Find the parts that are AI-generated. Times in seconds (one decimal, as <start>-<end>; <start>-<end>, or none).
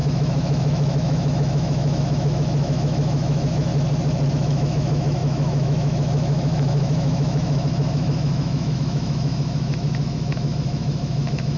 0.0-3.7; 4.3-11.6